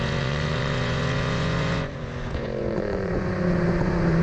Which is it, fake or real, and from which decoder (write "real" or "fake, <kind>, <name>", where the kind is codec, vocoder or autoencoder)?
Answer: fake, vocoder, Vocos